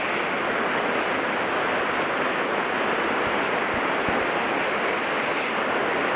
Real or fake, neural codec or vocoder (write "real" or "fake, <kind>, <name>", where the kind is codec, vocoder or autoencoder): real